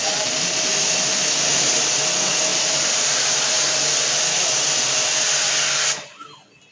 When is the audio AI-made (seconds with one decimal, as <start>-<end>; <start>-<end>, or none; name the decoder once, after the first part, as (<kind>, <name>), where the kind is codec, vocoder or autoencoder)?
0.0-1.8 (vocoder, BigVGAN v2); 2.5-3.7